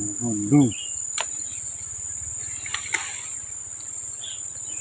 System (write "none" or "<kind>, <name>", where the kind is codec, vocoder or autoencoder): none